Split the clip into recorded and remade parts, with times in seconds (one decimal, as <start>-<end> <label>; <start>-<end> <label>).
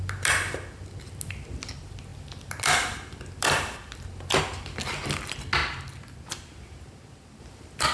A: 0.0-7.9 recorded